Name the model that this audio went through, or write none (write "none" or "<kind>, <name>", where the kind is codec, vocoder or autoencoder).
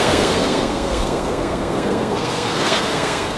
codec, SNAC